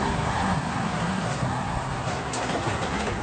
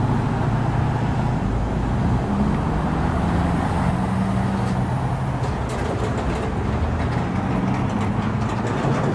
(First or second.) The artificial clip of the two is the first